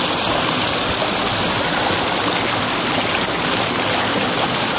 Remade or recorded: recorded